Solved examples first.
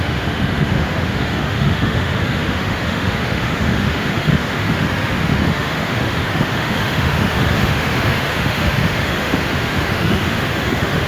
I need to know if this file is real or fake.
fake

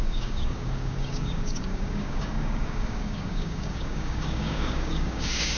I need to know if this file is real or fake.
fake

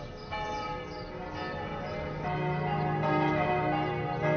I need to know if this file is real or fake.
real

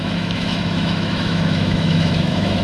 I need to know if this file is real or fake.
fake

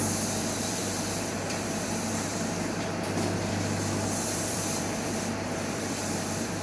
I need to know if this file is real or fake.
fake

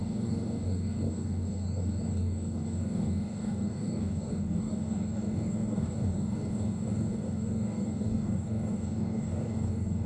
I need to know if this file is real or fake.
fake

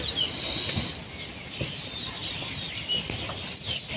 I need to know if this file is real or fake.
fake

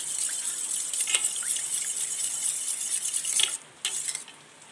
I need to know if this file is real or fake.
real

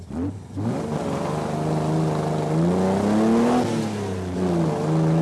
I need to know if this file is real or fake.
real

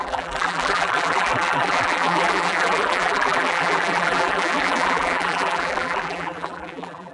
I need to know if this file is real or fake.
fake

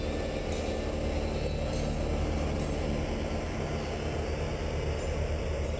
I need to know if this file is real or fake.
real